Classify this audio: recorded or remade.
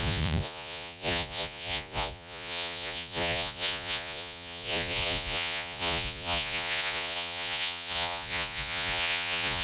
remade